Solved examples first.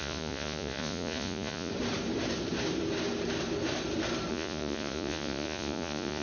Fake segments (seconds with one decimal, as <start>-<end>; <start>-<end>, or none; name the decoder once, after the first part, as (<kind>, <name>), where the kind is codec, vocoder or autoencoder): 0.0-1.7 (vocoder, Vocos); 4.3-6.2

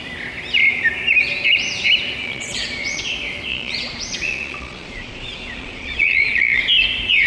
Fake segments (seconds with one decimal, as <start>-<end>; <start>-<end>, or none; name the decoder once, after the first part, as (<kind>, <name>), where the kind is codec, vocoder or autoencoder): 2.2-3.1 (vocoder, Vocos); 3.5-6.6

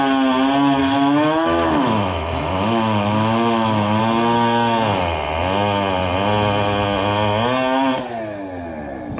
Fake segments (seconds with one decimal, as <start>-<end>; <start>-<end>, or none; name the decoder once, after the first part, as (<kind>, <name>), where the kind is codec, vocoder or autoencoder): 0.8-4.0 (autoencoder, DAC-VAE)

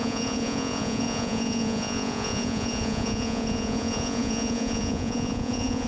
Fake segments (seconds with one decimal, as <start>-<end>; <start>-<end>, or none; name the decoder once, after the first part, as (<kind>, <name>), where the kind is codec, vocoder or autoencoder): 0.0-5.9 (vocoder, Vocos)

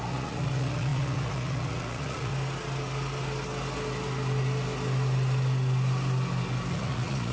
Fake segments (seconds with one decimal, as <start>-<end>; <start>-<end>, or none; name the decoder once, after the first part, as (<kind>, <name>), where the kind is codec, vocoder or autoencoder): 0.0-2.3 (vocoder, Vocos); 6.7-7.3